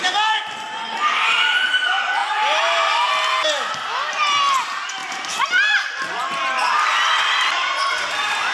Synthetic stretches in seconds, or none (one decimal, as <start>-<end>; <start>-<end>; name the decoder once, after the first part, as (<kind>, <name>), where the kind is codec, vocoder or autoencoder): 2.2-3.1 (vocoder, BigVGAN v2)